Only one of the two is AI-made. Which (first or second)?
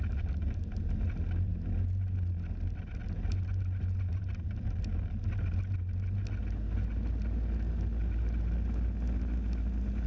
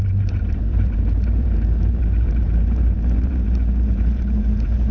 second